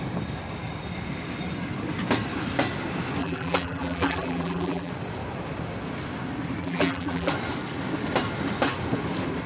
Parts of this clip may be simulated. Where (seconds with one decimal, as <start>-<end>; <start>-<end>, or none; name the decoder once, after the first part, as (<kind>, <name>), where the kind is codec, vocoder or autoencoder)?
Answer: 3.2-4.9 (vocoder, BigVGAN v2); 6.6-7.3